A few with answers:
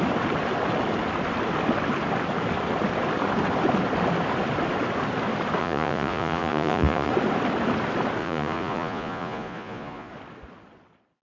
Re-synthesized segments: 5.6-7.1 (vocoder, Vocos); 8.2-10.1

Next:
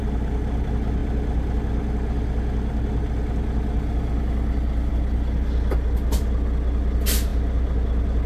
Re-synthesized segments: none

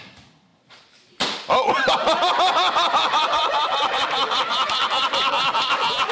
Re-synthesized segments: none

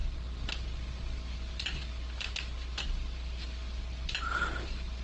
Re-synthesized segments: none